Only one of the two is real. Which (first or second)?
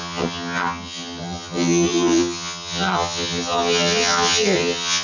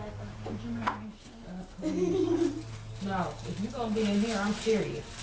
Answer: second